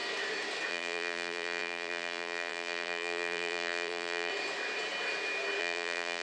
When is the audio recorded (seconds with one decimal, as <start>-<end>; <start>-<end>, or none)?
0.0-0.7; 4.3-5.6